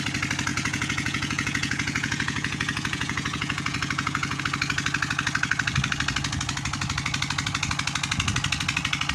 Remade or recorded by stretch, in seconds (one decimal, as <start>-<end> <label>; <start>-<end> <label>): 0.0-0.5 recorded; 0.5-4.4 remade; 4.4-9.1 recorded